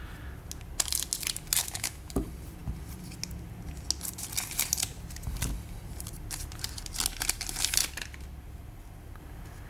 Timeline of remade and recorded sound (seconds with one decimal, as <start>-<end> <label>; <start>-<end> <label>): 0.0-1.6 recorded; 1.6-2.1 remade; 2.1-9.7 recorded